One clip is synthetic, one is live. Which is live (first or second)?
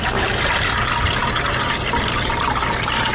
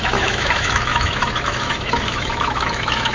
first